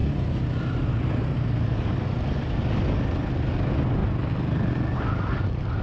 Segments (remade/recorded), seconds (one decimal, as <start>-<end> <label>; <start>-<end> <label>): 0.0-1.5 remade; 1.5-5.8 recorded

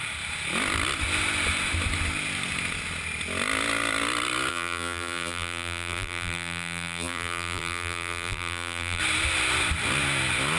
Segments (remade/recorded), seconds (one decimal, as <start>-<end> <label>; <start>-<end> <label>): 0.0-4.5 recorded; 4.5-9.0 remade; 9.0-10.6 recorded

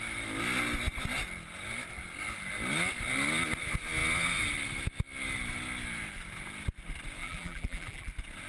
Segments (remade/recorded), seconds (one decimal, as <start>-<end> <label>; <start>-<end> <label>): 0.0-7.2 recorded; 7.2-8.1 remade; 8.1-8.5 recorded

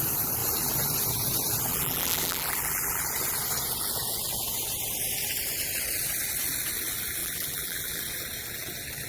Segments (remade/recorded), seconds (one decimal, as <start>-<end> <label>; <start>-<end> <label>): 0.0-1.7 recorded; 1.7-3.1 remade; 3.1-7.2 recorded; 7.2-8.0 remade; 8.0-9.1 recorded

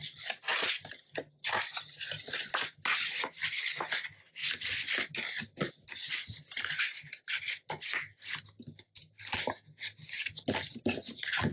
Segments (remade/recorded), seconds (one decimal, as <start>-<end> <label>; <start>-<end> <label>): 0.0-11.5 recorded

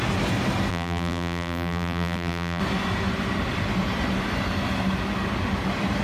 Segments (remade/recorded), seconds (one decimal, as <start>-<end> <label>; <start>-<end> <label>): 0.0-0.7 recorded; 0.7-2.6 remade; 2.6-6.0 recorded

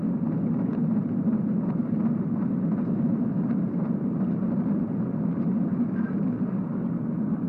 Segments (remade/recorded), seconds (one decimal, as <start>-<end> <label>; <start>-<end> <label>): 0.0-0.8 recorded; 0.8-4.8 remade; 4.8-7.5 recorded